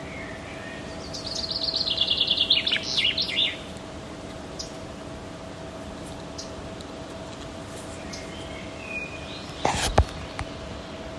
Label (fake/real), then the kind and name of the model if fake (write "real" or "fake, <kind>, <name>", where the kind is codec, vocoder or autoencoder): real